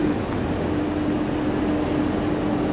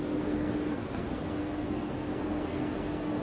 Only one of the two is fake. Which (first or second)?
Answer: second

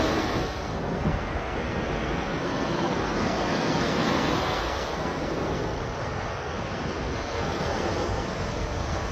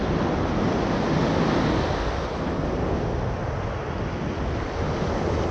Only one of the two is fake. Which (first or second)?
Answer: first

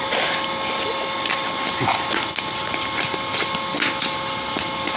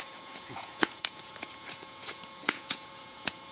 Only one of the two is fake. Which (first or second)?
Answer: second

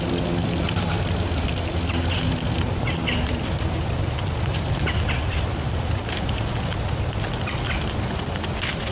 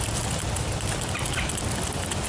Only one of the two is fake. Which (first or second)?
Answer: second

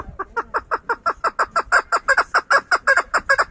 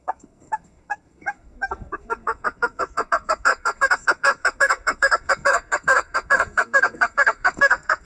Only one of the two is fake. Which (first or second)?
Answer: second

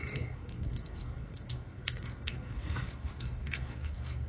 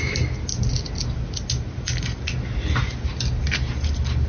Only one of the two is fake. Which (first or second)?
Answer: first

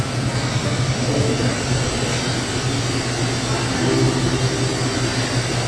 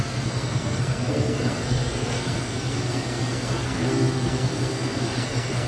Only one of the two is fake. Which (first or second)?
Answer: second